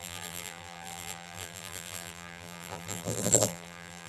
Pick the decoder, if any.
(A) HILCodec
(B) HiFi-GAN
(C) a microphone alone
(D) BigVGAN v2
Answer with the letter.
D